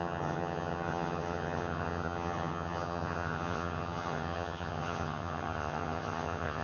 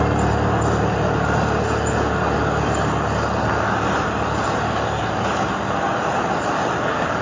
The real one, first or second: second